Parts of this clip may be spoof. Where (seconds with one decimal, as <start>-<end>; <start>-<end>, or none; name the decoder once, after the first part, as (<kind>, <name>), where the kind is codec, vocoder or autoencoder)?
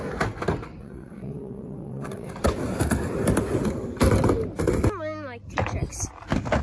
0.8-2.3 (vocoder, WaveNeXt)